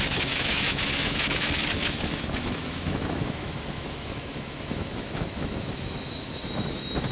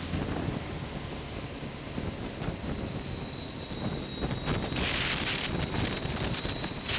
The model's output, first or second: first